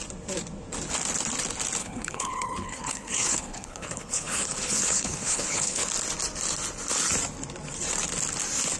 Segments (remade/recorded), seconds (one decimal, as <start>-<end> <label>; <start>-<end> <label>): 0.0-1.8 recorded; 1.8-5.9 remade; 5.9-8.8 recorded